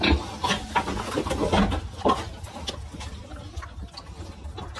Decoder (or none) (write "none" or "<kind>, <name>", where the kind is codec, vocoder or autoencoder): none